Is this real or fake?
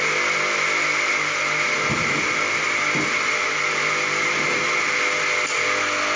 real